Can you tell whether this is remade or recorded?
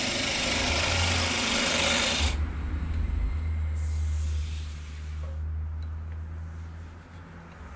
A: recorded